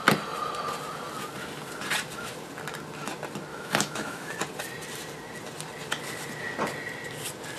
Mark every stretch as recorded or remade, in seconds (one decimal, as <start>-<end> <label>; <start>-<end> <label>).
0.0-3.5 recorded; 3.5-4.3 remade; 4.3-7.6 recorded